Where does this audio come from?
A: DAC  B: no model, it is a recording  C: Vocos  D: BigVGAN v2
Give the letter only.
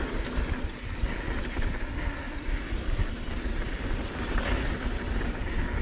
B